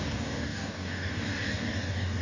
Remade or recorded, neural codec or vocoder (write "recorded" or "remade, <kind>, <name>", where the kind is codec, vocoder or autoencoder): remade, codec, DAC